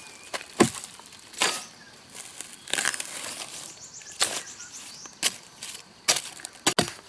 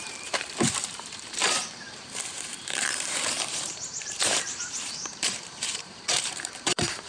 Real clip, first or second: first